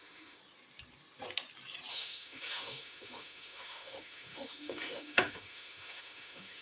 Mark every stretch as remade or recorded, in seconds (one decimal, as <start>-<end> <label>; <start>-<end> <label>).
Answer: 0.0-0.4 remade; 0.4-1.9 recorded; 1.9-6.6 remade